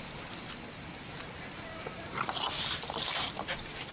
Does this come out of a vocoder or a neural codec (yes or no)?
no